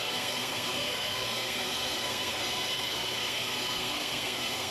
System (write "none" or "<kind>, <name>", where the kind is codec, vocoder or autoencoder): codec, SNAC